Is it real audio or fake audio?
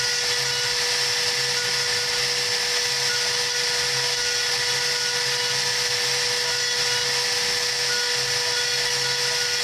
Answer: real